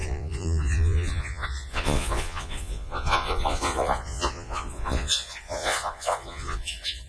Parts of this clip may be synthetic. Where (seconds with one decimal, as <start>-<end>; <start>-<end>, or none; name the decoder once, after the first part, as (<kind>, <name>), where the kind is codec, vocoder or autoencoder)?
0.0-7.1 (vocoder, Vocos)